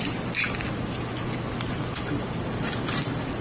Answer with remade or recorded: recorded